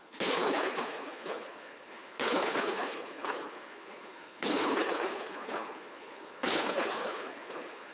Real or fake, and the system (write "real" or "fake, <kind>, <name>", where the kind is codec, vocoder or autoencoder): fake, codec, HILCodec